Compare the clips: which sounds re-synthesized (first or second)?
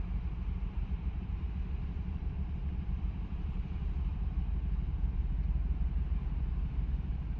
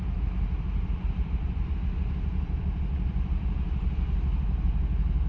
first